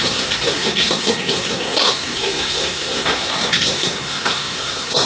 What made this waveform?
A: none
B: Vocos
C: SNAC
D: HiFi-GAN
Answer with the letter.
C